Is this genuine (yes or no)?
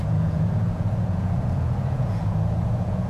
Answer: no